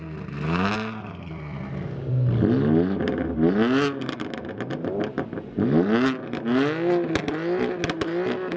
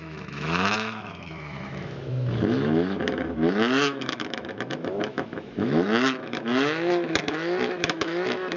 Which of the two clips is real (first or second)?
first